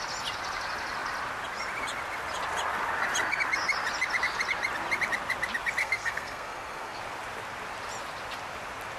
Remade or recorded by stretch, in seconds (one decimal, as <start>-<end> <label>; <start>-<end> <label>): 0.0-5.8 recorded; 5.8-7.0 remade; 7.0-9.0 recorded